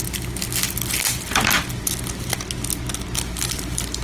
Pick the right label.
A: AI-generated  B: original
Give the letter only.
B